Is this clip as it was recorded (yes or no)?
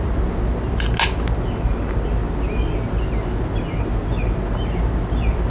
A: yes